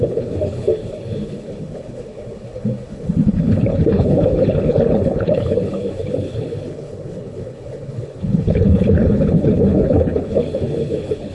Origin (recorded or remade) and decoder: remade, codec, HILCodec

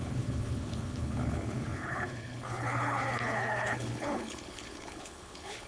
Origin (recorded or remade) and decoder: remade, codec, HILCodec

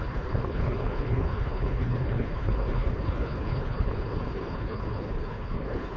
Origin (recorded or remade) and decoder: remade, codec, HILCodec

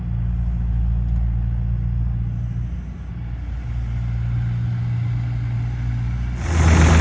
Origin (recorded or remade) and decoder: recorded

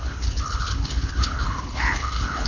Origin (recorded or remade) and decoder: remade, codec, HILCodec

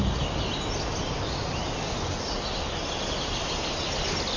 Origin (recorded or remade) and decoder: recorded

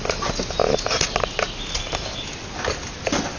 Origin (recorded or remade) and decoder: recorded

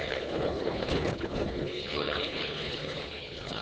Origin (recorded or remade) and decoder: remade, codec, HILCodec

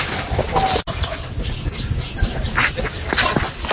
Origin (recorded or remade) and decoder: recorded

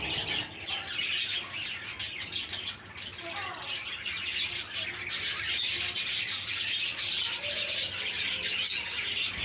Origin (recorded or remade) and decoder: recorded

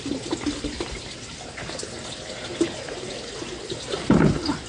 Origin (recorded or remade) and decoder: recorded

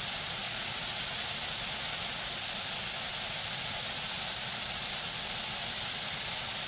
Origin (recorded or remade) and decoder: recorded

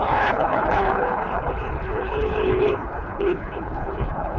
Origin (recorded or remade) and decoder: remade, codec, HILCodec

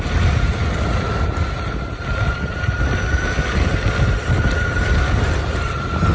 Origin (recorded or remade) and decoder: recorded